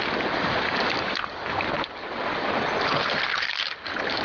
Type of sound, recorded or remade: recorded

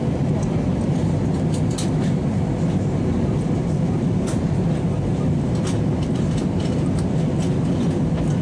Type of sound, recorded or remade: recorded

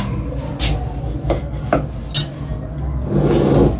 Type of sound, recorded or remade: recorded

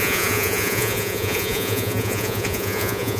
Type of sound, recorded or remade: remade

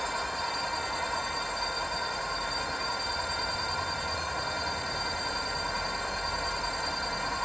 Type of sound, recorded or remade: recorded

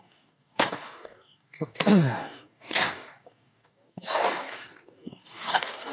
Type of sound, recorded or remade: remade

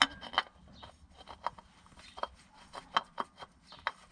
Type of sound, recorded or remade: recorded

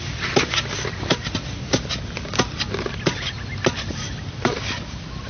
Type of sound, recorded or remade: recorded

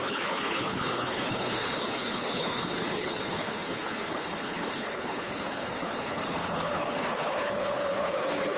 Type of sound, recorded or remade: remade